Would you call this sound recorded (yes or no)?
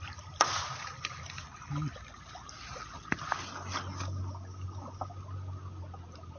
yes